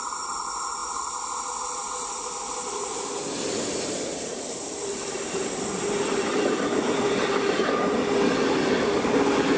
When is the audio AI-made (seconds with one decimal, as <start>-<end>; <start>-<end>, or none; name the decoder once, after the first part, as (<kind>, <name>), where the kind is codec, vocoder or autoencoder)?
3.5-5.9 (vocoder, BigVGAN v2)